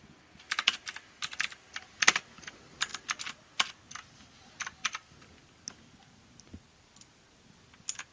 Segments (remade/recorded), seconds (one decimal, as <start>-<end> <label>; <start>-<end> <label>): 0.0-8.1 recorded